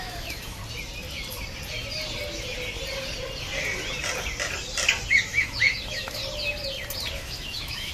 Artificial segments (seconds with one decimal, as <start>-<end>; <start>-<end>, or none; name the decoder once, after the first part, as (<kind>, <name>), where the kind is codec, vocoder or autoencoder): 0.0-0.6 (autoencoder, DAC-VAE); 5.1-6.2; 7.1-7.9